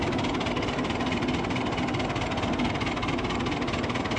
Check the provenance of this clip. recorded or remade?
recorded